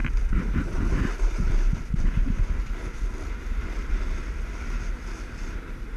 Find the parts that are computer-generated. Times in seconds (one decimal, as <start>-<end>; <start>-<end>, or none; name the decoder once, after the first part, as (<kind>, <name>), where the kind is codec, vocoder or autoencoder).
none